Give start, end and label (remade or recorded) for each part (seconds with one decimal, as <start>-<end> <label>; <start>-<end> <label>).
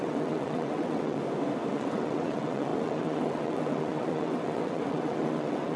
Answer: 0.0-1.2 remade; 1.2-1.7 recorded; 1.7-5.8 remade